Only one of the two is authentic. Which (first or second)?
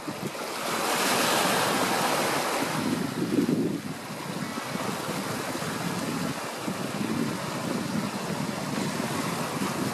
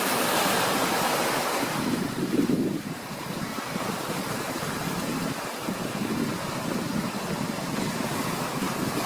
first